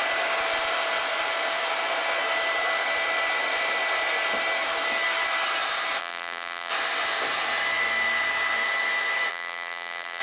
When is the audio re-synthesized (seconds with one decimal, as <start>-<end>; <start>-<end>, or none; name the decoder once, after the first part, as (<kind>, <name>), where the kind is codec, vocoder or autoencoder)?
6.0-6.7 (vocoder, BigVGAN v2); 9.3-10.2